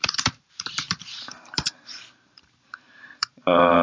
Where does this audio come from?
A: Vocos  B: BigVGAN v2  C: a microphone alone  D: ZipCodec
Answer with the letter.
B